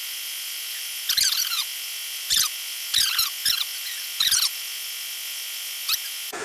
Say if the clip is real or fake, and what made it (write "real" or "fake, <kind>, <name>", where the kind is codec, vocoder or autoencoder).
fake, vocoder, Vocos